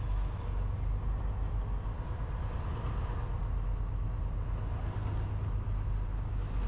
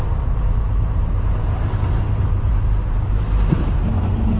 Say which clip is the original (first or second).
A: first